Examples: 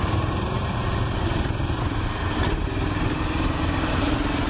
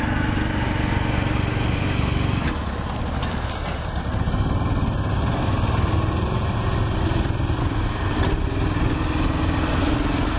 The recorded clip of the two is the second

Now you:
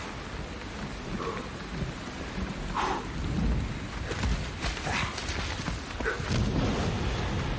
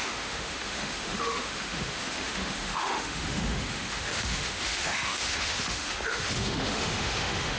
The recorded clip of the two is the first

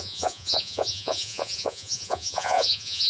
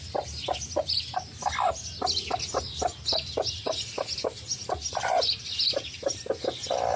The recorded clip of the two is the second